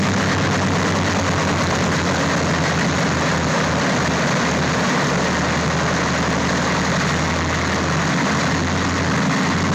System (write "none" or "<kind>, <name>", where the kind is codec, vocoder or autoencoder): none